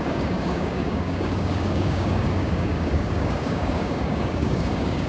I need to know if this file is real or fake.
fake